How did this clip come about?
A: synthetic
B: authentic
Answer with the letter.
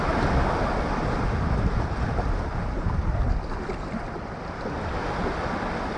B